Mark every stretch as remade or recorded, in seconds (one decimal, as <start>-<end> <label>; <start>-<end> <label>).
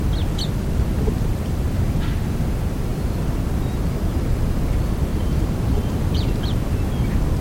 0.0-5.1 recorded; 5.1-6.7 remade; 6.7-7.4 recorded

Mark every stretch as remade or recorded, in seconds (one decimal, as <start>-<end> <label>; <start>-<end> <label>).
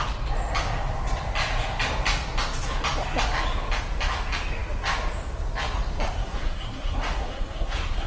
0.0-6.2 recorded; 6.2-8.1 remade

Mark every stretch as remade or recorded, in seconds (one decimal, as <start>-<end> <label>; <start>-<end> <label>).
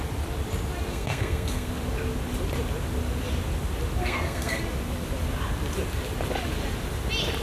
0.0-0.9 recorded; 0.9-1.7 remade; 1.7-4.0 recorded; 4.0-4.6 remade; 4.6-7.4 recorded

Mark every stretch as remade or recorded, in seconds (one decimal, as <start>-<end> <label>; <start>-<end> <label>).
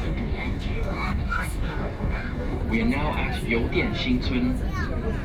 0.0-2.6 remade; 2.6-5.2 recorded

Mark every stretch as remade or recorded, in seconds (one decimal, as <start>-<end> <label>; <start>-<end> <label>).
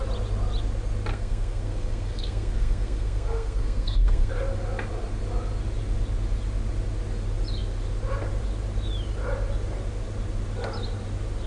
0.0-1.1 recorded; 1.1-4.3 remade; 4.3-11.5 recorded